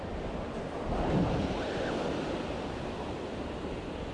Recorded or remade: recorded